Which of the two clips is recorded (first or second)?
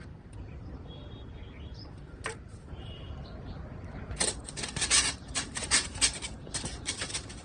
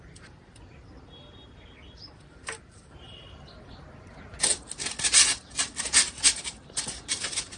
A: second